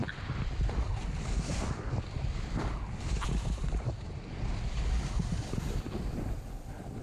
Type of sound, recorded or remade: recorded